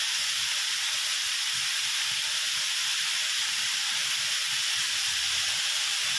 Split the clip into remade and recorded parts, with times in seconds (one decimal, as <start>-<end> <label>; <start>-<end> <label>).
0.0-2.9 recorded; 2.9-4.2 remade; 4.2-6.2 recorded